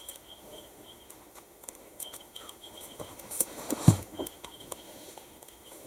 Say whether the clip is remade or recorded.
remade